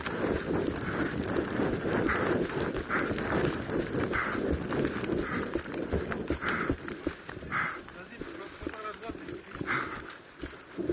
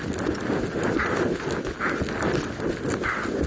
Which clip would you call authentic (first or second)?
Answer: second